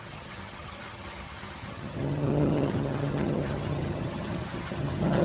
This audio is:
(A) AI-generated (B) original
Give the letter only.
A